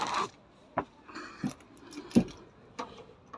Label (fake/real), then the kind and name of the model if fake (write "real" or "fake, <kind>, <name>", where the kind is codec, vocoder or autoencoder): real